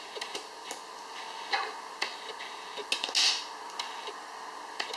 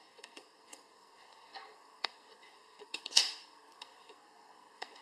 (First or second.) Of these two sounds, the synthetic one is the second